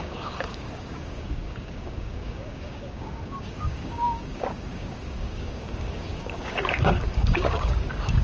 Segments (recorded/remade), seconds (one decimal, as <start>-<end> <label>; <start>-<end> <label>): 0.0-8.2 remade